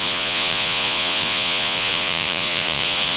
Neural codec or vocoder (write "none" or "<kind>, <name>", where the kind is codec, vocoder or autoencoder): vocoder, Vocos